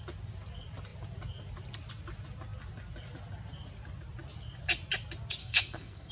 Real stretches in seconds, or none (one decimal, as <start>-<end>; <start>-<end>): 0.0-5.4